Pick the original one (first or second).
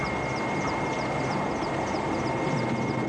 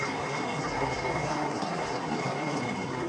first